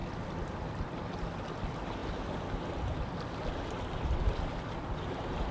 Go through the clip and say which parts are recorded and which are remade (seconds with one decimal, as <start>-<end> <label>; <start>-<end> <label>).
0.0-5.5 recorded